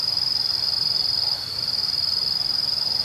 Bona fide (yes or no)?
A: yes